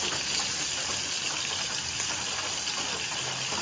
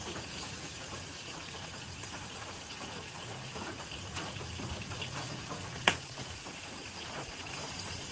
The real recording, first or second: first